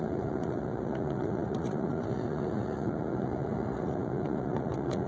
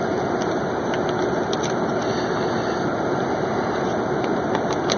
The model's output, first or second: first